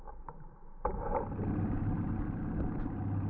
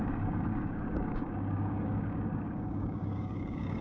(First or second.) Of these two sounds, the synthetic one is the second